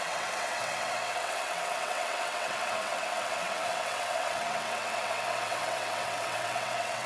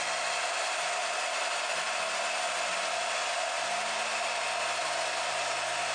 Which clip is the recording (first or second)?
second